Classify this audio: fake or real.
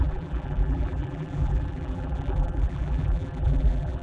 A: fake